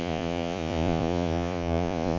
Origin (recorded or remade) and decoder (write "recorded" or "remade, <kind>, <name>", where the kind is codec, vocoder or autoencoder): remade, vocoder, Vocos